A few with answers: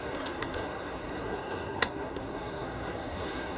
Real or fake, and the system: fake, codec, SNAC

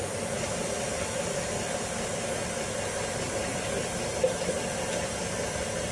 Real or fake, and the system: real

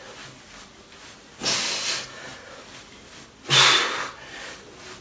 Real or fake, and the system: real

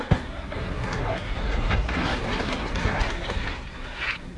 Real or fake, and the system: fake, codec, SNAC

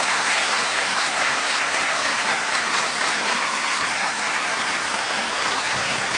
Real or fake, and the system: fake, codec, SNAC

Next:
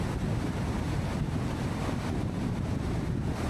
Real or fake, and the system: real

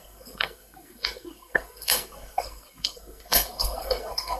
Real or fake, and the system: fake, codec, SNAC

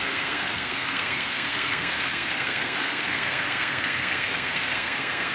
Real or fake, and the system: fake, codec, SNAC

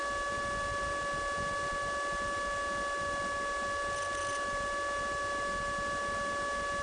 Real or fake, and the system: real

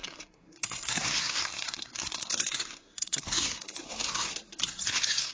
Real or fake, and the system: fake, codec, SNAC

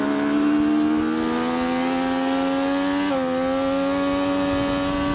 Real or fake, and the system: real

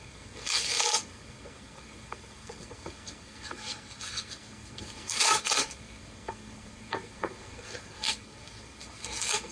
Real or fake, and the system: fake, codec, SNAC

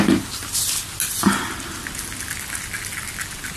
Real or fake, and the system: real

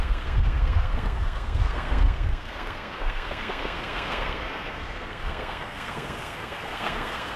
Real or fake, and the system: fake, codec, SNAC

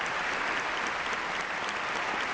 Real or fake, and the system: real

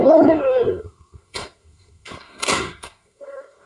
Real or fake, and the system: fake, codec, SNAC